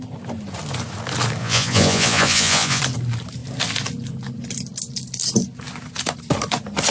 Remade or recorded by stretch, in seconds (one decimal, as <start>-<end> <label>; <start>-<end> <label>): 0.0-1.4 recorded; 1.4-2.8 remade; 2.8-6.9 recorded